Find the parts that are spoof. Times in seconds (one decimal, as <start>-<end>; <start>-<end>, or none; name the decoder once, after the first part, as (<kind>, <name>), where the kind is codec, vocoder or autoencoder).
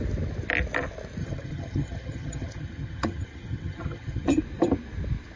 1.2-4.4 (vocoder, HiFi-GAN)